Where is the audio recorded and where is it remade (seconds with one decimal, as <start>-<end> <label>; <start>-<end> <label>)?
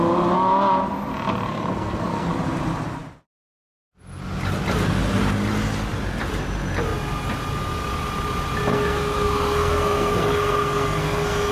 0.0-1.5 recorded; 1.5-2.3 remade; 2.3-8.7 recorded; 8.7-11.5 remade